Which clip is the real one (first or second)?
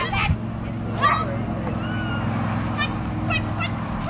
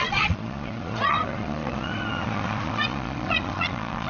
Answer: first